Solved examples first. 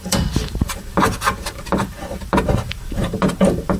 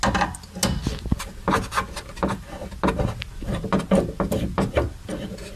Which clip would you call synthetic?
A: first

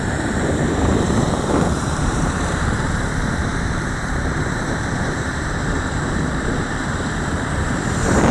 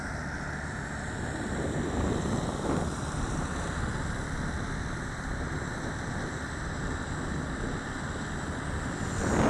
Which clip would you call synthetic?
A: first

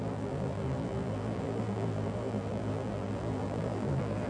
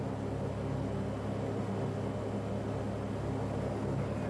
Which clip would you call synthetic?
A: first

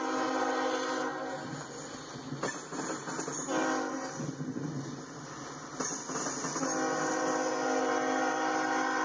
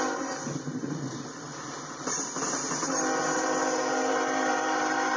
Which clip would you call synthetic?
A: second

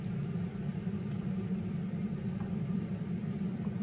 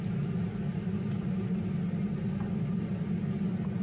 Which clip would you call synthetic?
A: first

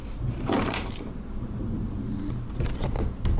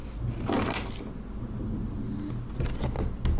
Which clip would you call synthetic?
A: first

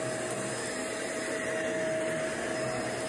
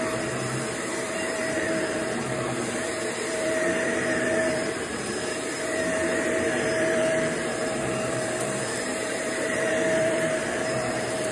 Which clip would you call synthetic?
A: second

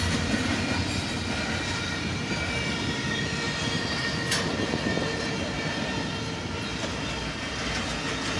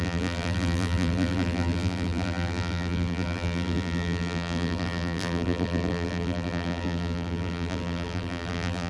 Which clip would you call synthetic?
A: second